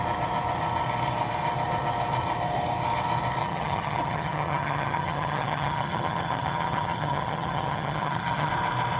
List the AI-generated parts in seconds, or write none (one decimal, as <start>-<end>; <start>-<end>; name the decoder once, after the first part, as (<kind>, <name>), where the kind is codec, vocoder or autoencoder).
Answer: 3.4-8.5 (vocoder, HiFi-GAN)